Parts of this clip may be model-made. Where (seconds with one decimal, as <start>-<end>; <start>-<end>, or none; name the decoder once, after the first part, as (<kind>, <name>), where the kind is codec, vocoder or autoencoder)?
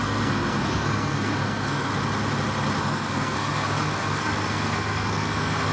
0.0-1.9 (codec, SNAC); 2.8-5.7